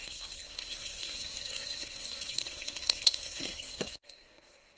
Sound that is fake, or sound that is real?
fake